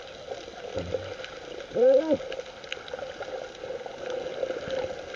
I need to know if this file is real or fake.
real